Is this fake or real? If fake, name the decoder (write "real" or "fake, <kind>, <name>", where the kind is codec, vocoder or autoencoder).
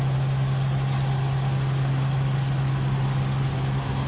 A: real